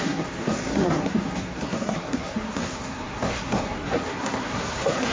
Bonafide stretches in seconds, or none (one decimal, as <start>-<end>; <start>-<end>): none